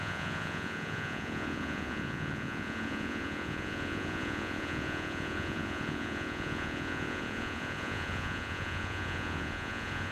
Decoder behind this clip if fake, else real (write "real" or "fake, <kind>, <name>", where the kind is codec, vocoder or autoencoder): fake, vocoder, Vocos